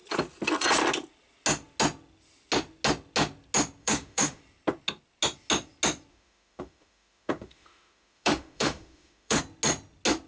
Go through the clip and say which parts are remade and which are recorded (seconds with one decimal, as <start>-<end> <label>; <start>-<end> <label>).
0.0-3.8 recorded; 3.8-4.4 remade; 4.4-6.1 recorded; 6.1-9.4 remade; 9.4-10.3 recorded